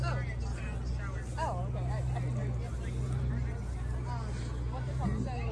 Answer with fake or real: real